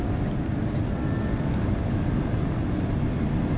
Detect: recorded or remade recorded